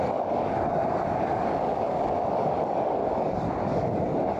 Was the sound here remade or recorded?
remade